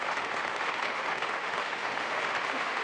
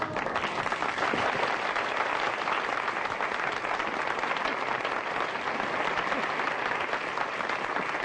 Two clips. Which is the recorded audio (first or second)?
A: second